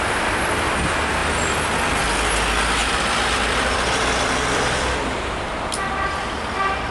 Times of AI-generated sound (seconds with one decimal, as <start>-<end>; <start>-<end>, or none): 2.8-6.9